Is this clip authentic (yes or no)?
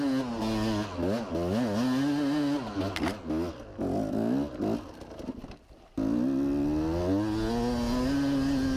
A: yes